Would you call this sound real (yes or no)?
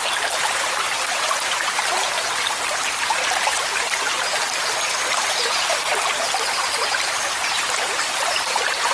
no